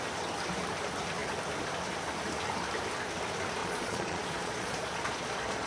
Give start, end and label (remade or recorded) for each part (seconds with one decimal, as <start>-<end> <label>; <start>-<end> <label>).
0.0-3.6 recorded; 3.6-5.7 remade